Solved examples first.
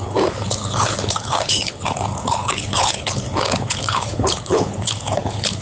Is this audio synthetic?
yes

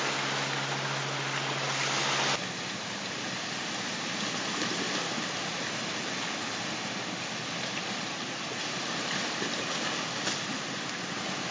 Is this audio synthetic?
no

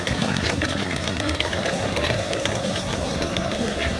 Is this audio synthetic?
yes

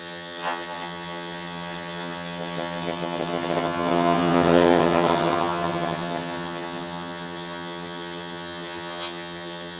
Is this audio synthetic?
yes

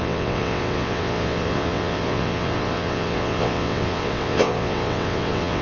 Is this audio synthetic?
yes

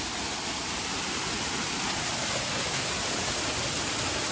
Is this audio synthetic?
no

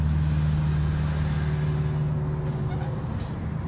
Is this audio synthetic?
no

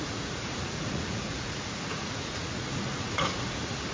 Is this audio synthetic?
yes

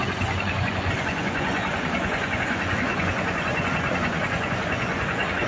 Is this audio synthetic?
yes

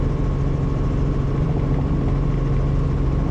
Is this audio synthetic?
no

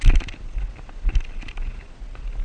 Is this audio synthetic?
no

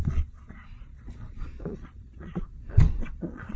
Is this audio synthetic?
yes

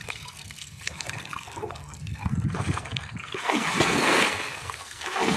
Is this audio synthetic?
yes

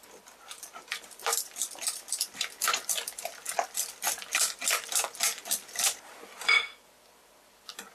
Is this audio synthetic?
yes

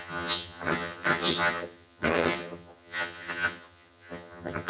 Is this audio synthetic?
yes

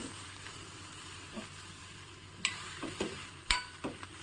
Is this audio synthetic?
yes